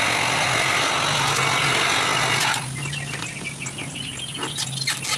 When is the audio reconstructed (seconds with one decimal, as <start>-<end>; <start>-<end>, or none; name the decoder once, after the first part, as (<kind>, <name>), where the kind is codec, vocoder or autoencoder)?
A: none